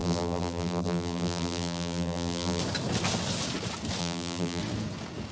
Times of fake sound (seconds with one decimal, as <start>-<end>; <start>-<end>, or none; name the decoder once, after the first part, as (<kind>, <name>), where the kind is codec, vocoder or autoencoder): 0.0-2.6 (vocoder, BigVGAN v2); 4.0-4.6